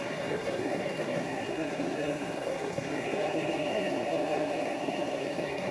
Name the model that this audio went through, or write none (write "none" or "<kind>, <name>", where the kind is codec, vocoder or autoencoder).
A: codec, SNAC